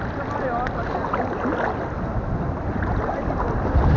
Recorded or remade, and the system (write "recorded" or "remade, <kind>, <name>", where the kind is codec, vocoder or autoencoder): recorded